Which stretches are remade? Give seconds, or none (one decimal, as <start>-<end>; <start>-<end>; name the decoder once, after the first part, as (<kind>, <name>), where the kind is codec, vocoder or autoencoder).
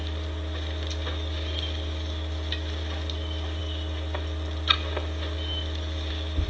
none